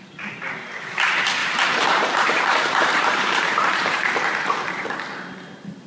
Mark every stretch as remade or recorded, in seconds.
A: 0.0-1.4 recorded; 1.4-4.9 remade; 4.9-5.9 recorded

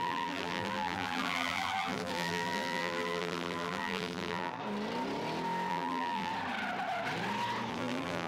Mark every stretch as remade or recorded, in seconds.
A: 0.0-4.6 remade; 4.6-5.7 recorded; 5.7-6.3 remade; 6.3-7.7 recorded; 7.7-8.3 remade

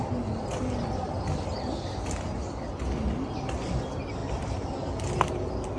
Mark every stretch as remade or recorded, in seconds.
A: 0.0-4.2 recorded; 4.2-4.9 remade; 4.9-5.8 recorded